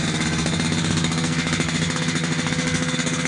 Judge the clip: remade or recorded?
remade